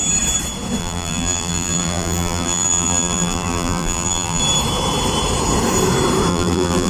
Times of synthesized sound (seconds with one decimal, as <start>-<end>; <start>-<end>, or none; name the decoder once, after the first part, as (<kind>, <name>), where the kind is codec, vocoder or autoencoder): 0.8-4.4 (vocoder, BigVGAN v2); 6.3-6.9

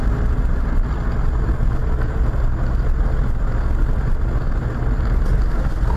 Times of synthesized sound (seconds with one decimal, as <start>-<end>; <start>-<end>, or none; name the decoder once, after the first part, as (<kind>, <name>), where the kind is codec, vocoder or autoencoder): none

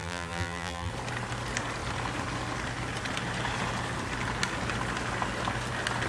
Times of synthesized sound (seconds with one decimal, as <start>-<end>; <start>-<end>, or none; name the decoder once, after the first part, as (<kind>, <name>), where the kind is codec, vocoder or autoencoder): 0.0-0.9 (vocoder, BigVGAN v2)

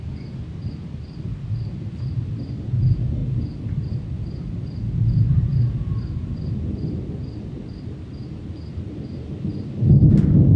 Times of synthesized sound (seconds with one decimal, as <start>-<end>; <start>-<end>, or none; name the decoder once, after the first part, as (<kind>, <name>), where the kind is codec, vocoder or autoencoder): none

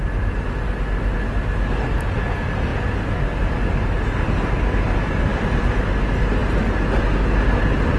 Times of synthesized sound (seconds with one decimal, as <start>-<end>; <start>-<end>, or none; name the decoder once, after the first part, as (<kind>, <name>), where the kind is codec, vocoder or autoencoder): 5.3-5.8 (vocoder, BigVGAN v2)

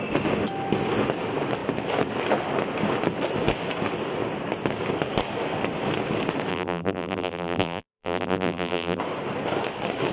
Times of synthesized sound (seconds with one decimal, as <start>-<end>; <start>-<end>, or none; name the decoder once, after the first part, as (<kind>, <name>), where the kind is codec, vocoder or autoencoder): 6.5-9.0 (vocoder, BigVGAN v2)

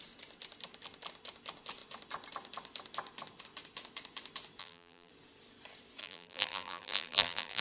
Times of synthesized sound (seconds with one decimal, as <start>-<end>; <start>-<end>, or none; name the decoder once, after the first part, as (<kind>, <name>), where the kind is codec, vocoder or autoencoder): 4.6-5.1 (vocoder, BigVGAN v2); 6.0-7.6